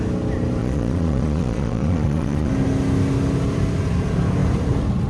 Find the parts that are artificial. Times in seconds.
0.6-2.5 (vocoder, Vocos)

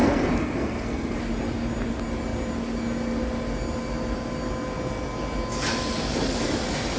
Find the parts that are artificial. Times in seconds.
0.0-1.2 (codec, SNAC)

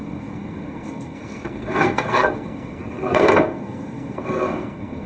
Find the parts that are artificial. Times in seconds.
0.0-5.1 (codec, SNAC)